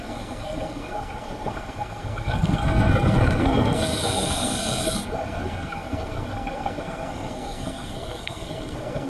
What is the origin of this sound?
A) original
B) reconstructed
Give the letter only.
B